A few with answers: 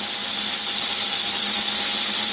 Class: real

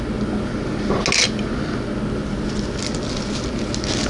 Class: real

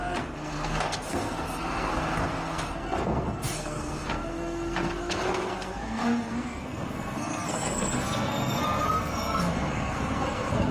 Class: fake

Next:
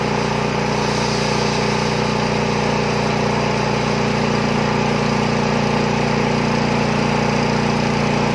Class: real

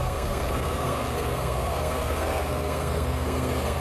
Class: fake